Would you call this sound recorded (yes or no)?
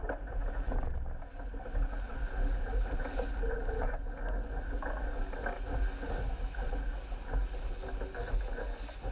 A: yes